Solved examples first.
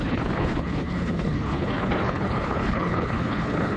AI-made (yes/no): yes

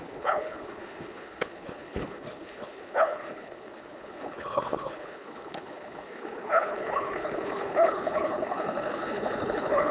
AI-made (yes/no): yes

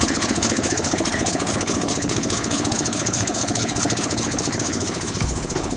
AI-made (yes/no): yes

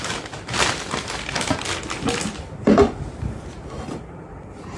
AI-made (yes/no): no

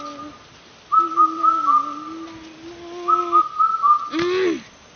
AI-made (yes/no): no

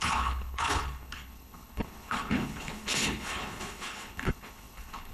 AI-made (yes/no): yes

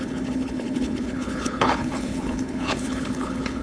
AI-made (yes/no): yes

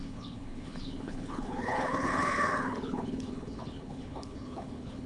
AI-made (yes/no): yes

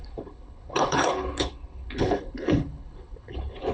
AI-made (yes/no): yes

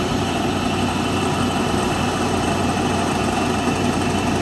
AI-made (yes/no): no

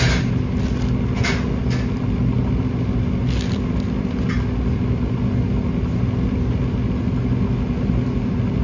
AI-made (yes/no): no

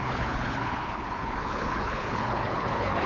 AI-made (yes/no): yes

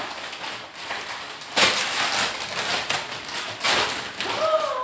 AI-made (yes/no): no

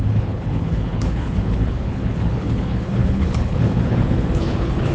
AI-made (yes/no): yes